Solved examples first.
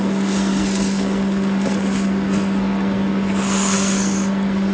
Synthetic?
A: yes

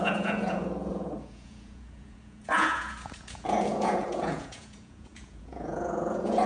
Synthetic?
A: yes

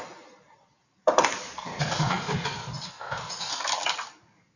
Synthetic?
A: no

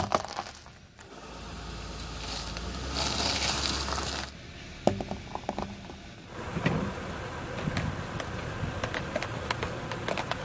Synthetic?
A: no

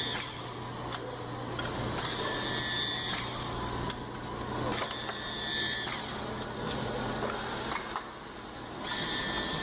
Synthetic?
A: no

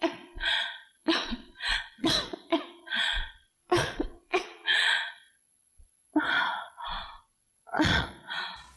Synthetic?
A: yes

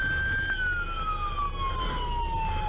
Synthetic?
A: no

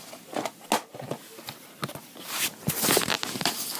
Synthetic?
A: no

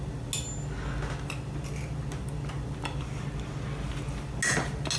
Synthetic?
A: no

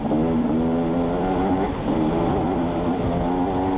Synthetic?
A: no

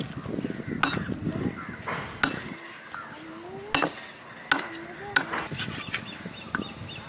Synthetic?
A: no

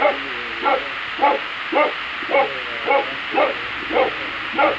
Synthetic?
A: no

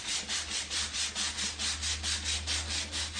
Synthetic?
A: no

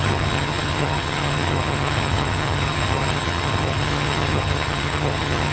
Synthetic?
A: yes